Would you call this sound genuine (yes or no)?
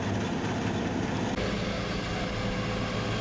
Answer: yes